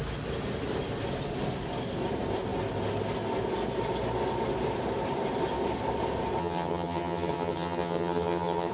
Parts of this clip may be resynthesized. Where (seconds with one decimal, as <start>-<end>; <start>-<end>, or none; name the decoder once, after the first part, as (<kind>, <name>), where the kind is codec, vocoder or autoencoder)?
6.4-8.7 (vocoder, HiFi-GAN)